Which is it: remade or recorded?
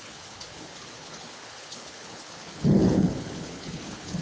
remade